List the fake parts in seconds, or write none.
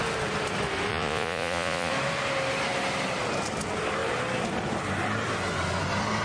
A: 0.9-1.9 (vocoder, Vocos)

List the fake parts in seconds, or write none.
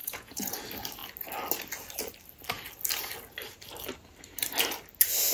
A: 0.0-0.5 (vocoder, Vocos)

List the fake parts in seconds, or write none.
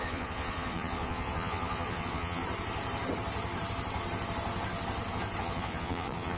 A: 0.0-2.4 (vocoder, Vocos); 5.4-6.4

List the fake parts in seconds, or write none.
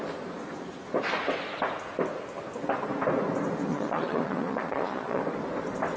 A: 3.7-5.2 (vocoder, Vocos)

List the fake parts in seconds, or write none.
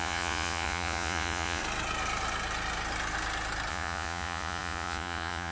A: 0.0-1.6 (vocoder, Vocos); 3.7-5.5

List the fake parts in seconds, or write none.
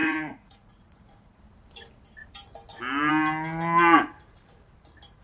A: 0.0-1.4 (vocoder, Vocos)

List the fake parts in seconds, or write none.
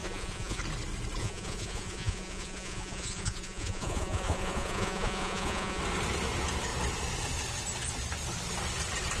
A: 0.0-0.6 (vocoder, Vocos); 1.2-5.8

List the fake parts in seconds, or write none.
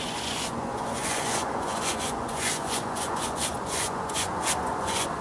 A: 0.0-5.2 (vocoder, Vocos)